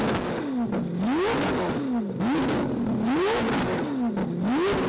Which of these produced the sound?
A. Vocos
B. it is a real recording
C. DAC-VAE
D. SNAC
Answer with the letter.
B